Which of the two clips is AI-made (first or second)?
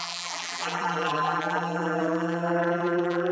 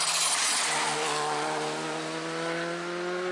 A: first